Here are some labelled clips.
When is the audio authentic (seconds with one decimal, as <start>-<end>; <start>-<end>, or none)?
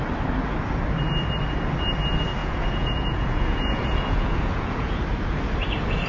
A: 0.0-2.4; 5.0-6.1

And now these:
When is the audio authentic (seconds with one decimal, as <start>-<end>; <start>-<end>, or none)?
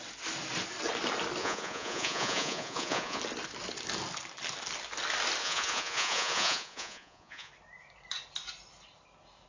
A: 0.0-1.4; 3.2-5.4; 7.5-9.5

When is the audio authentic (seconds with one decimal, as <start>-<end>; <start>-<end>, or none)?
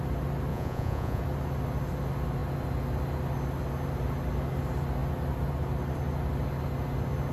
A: 0.0-0.5; 1.2-7.3